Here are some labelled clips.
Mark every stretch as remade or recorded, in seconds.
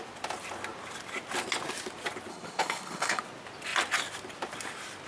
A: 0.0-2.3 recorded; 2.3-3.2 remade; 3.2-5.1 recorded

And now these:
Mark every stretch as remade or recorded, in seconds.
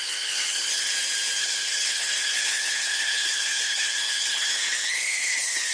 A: 0.0-0.9 remade; 0.9-1.4 recorded; 1.4-5.7 remade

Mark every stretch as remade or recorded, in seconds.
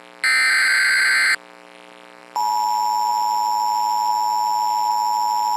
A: 0.0-5.6 recorded